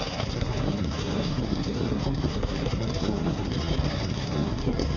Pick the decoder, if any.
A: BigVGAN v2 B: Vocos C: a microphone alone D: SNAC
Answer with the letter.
D